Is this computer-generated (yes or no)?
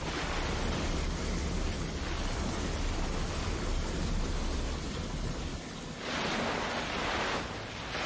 no